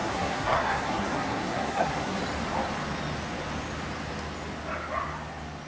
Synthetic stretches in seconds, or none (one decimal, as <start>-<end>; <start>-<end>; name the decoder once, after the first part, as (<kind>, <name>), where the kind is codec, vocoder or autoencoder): 0.0-2.2 (codec, SNAC)